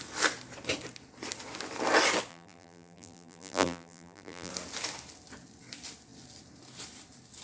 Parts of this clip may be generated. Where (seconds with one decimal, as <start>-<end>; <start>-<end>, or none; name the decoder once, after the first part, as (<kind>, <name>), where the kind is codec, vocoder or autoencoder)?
2.3-4.5 (vocoder, BigVGAN v2)